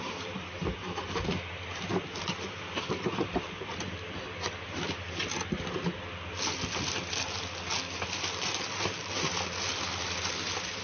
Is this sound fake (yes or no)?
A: no